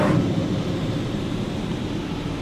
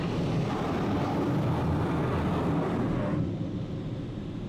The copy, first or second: first